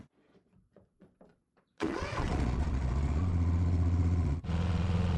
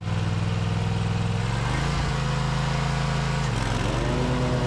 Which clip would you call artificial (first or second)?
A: first